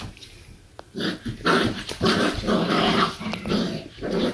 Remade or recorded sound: remade